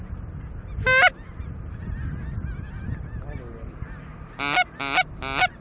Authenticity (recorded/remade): recorded